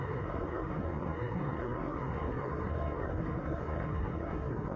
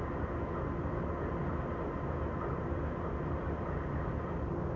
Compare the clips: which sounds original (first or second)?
second